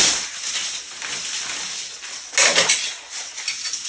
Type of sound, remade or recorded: recorded